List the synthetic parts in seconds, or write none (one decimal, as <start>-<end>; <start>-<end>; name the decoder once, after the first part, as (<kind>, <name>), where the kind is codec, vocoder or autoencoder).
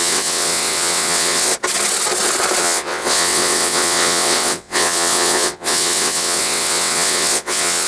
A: 0.0-1.5 (vocoder, WaveNeXt); 2.6-7.9